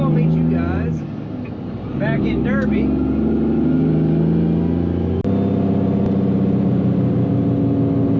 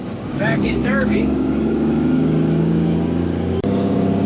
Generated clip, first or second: second